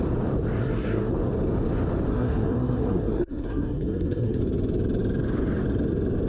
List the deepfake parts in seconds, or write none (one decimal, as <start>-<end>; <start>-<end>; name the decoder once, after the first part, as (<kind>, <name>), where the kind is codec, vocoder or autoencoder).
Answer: 0.6-1.1 (codec, SNAC); 2.1-4.4